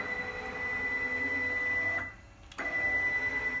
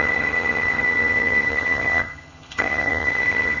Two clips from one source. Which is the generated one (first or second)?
second